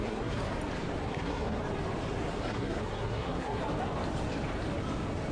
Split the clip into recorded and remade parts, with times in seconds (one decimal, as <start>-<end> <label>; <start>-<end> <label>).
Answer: 0.0-0.5 remade; 0.5-1.0 recorded; 1.0-1.6 remade; 1.6-2.3 recorded; 2.3-3.6 remade; 3.6-5.3 recorded